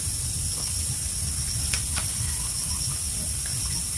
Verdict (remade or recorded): recorded